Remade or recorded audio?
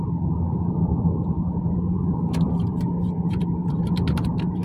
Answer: remade